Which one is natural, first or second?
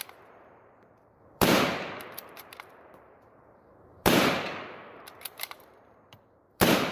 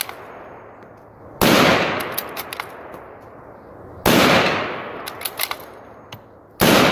second